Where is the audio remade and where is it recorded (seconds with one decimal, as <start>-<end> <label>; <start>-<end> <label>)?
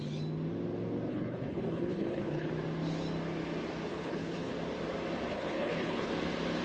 0.0-1.1 recorded; 1.1-2.5 remade; 2.5-3.9 recorded; 3.9-4.5 remade; 4.5-5.3 recorded; 5.3-6.1 remade; 6.1-6.6 recorded